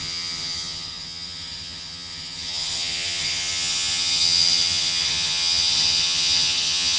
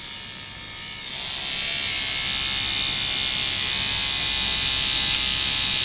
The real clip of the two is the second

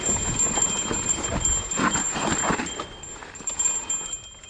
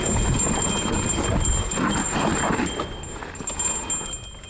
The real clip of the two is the second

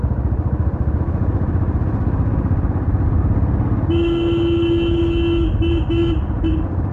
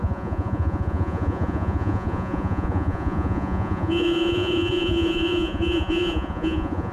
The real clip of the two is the first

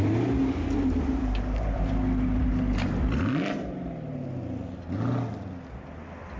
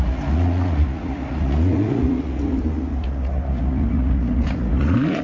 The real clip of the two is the first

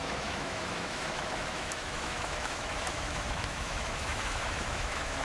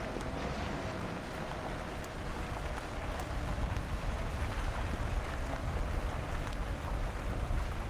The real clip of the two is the second